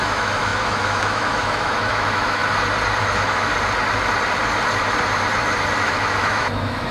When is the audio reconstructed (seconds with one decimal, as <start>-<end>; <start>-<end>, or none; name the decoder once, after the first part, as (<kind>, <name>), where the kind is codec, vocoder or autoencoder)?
0.0-2.4 (autoencoder, DAC-VAE); 3.0-3.5; 5.8-6.9